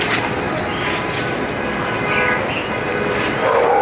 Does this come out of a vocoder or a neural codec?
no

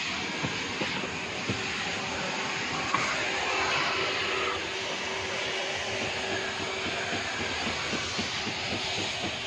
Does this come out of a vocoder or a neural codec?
no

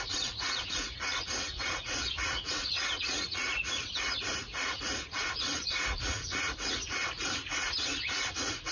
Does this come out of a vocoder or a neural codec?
yes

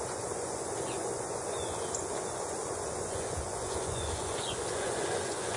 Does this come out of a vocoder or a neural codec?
yes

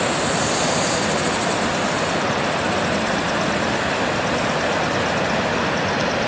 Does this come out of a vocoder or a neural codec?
no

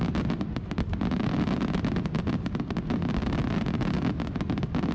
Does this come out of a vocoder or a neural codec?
no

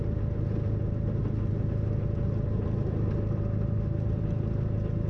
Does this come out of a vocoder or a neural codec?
no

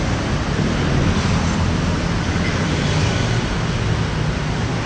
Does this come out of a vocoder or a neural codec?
no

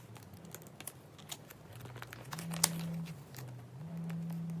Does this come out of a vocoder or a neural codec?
no